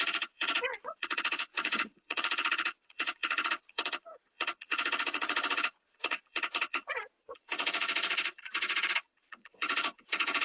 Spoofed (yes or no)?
yes